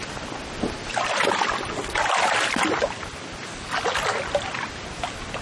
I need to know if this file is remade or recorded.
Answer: recorded